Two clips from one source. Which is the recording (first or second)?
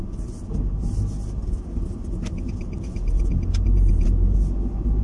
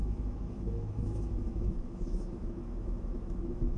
first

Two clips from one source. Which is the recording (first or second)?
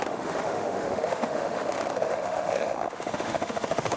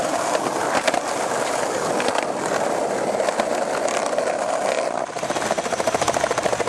second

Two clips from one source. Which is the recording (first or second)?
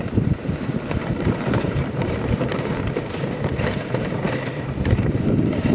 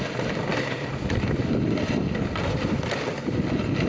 second